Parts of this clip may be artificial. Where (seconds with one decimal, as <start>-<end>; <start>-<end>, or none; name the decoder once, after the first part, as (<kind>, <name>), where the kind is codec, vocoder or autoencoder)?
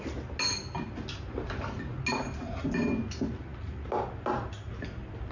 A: none